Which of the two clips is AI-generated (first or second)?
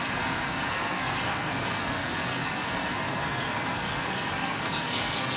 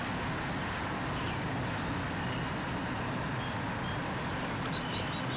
first